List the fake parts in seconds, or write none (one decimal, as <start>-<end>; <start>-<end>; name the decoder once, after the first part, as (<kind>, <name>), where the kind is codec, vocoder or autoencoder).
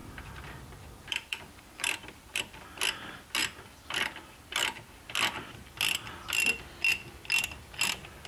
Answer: 0.0-2.6 (vocoder, BigVGAN v2)